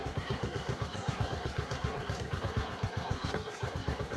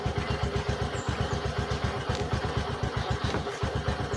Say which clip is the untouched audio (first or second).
second